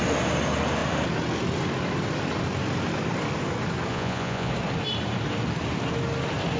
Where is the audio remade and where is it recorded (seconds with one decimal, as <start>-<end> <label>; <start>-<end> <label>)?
0.0-3.9 recorded; 3.9-4.5 remade; 4.5-6.6 recorded